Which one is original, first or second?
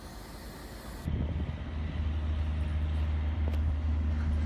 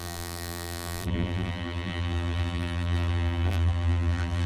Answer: first